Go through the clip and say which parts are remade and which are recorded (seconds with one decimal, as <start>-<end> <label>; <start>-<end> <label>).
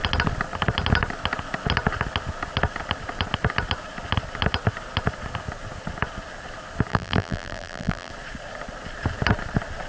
0.0-6.9 recorded; 6.9-8.1 remade; 8.1-9.9 recorded